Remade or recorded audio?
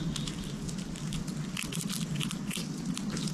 recorded